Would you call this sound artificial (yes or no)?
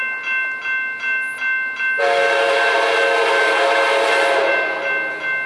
no